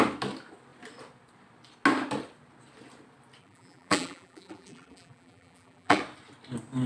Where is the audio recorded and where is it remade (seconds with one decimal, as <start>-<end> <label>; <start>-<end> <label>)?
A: 0.0-3.4 recorded; 3.4-6.0 remade; 6.0-6.9 recorded